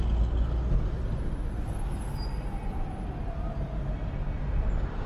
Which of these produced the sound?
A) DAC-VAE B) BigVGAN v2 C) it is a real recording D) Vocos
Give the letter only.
C